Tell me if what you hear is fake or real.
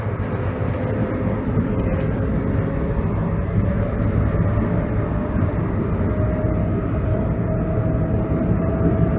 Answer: real